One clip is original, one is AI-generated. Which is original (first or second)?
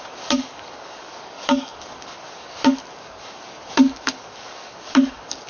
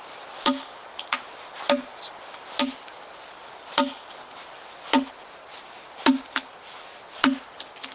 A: second